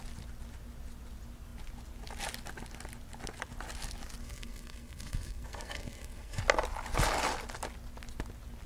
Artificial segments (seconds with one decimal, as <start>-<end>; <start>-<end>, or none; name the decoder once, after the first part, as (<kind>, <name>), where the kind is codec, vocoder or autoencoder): 4.2-6.4 (codec, SNAC)